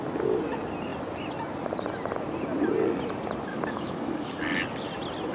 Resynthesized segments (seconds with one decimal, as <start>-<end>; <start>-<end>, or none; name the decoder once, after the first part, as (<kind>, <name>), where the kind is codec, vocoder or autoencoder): 3.5-4.4 (codec, DAC)